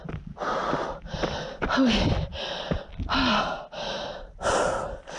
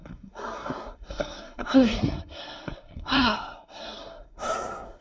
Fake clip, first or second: second